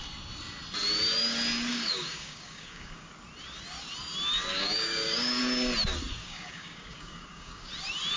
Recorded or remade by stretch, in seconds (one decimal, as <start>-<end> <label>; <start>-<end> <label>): 0.0-1.7 recorded; 1.7-3.1 remade; 3.1-4.5 recorded; 4.5-5.4 remade; 5.4-6.2 recorded; 6.2-7.7 remade; 7.7-8.2 recorded